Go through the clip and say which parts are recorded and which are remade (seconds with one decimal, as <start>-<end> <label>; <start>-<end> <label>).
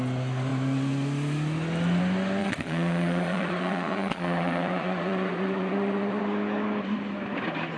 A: 0.0-2.4 recorded; 2.4-6.2 remade; 6.2-7.8 recorded